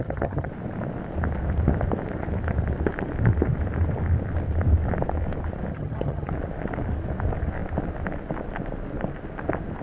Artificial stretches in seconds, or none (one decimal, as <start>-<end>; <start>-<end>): 0.0-0.5; 5.7-6.3